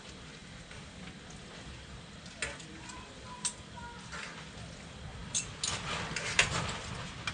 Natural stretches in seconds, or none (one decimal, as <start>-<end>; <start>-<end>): 0.0-7.3